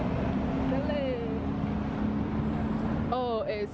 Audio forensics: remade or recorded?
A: recorded